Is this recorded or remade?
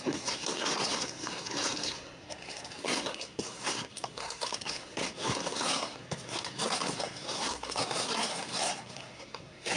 remade